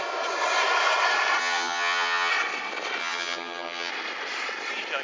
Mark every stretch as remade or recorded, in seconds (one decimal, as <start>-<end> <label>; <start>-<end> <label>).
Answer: 0.0-1.4 recorded; 1.4-2.3 remade; 2.3-3.0 recorded; 3.0-3.9 remade; 3.9-5.0 recorded